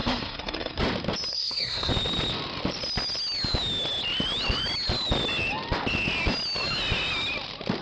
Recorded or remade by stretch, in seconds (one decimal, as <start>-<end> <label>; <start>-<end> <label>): 0.0-0.8 remade; 0.8-1.3 recorded; 1.3-1.9 remade; 1.9-7.8 recorded

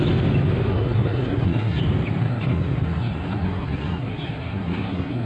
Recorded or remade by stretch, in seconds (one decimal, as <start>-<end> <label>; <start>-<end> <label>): 0.0-0.7 recorded; 0.7-1.8 remade; 1.8-2.2 recorded; 2.2-5.3 remade

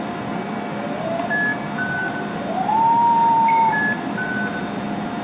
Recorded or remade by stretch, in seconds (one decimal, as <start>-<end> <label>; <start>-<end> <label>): 0.0-5.2 recorded

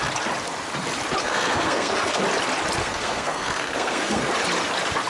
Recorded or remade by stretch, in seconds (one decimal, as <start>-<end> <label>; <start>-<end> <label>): 0.0-1.2 recorded; 1.2-2.2 remade; 2.2-2.8 recorded; 2.8-4.3 remade; 4.3-5.1 recorded

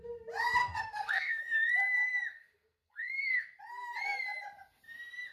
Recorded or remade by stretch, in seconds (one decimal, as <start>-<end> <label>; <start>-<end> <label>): 0.0-0.6 recorded; 0.6-1.4 remade; 1.4-2.3 recorded; 2.3-3.6 remade; 3.6-5.3 recorded